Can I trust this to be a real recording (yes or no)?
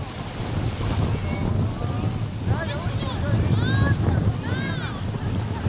yes